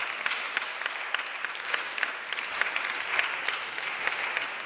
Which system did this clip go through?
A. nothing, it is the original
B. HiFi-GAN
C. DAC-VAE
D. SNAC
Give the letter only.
A